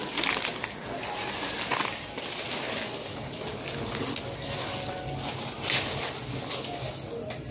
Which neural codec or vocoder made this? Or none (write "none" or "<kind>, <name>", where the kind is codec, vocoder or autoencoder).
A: none